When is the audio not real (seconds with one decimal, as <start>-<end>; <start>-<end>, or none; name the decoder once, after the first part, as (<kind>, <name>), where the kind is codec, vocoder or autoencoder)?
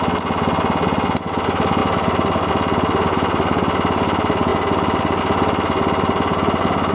none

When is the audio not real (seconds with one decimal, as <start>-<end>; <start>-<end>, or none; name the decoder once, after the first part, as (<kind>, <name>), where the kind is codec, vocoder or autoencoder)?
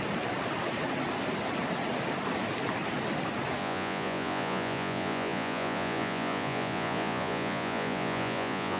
3.6-8.8 (vocoder, Vocos)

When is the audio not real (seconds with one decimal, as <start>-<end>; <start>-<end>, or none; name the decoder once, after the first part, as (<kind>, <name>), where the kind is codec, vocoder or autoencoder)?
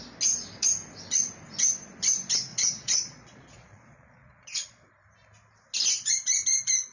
2.5-4.9 (vocoder, Vocos)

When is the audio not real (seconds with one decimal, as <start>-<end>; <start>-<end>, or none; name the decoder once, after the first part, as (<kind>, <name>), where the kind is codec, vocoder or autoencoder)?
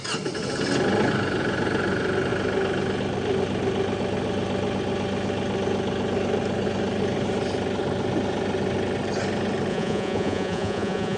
9.7-11.2 (vocoder, Vocos)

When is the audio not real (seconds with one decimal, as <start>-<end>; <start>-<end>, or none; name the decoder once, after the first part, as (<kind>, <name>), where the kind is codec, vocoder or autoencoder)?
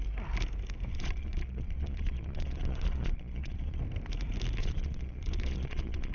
0.9-3.8 (vocoder, Vocos); 4.6-6.1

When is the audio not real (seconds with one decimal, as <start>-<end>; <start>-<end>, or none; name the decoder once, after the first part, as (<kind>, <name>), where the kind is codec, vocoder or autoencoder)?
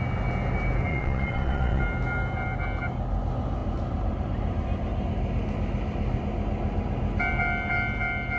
0.9-1.8 (vocoder, Vocos)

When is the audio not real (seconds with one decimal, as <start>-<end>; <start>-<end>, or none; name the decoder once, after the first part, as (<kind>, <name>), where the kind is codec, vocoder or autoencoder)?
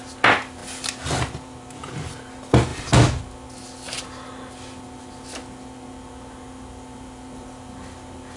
none